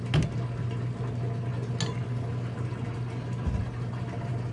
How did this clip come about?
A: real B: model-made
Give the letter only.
A